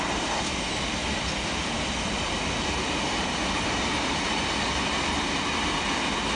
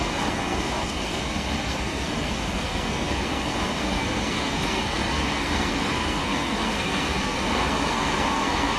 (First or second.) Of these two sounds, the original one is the first